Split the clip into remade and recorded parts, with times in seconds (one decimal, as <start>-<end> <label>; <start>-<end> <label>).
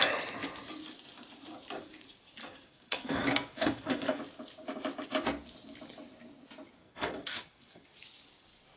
0.0-2.4 recorded; 2.4-4.2 remade; 4.2-6.8 recorded; 6.8-7.9 remade; 7.9-8.8 recorded